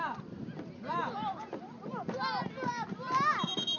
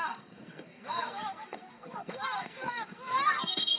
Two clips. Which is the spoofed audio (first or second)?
second